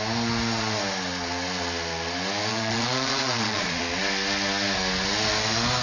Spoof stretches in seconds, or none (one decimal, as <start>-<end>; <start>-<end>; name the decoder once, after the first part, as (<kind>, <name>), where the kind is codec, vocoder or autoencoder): 2.5-3.8 (vocoder, Vocos)

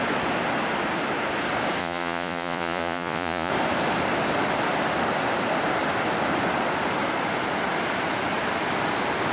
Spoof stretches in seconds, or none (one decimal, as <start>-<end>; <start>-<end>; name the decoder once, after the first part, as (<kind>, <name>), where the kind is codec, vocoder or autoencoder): 1.8-3.5 (vocoder, Vocos)

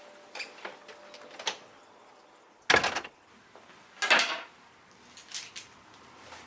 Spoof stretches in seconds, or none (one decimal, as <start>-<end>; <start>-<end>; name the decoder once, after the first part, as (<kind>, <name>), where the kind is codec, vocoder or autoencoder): none

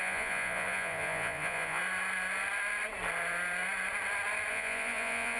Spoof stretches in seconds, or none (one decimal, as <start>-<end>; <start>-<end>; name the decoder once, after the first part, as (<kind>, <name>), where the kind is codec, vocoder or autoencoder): 0.0-1.8 (vocoder, Vocos); 4.5-5.4

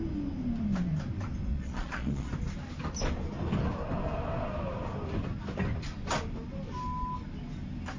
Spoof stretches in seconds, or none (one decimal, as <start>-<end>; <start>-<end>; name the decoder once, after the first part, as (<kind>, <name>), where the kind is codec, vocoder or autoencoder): 1.5-2.3 (vocoder, Vocos)

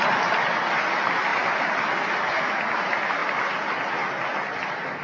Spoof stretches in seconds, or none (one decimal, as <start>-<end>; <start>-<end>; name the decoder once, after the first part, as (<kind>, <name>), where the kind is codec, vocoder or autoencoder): none

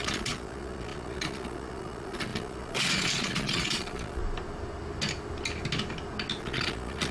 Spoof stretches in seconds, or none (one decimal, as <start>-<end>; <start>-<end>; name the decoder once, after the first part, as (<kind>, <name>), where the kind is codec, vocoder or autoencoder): 0.0-4.2 (vocoder, Vocos); 6.4-7.1